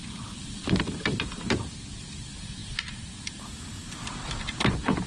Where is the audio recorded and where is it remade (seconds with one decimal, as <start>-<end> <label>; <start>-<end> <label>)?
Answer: 0.0-5.1 remade